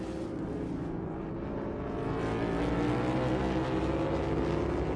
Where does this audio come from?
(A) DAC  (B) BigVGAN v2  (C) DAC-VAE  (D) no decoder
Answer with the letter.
D